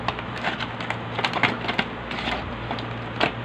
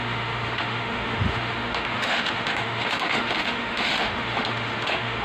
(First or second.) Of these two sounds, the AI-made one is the second